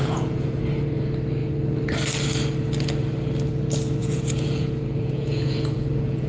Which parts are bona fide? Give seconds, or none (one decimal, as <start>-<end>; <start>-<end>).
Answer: 0.6-4.0